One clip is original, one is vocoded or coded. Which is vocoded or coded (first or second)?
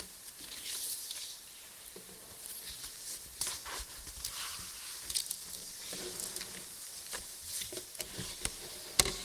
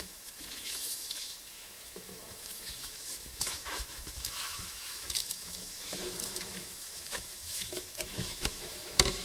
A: second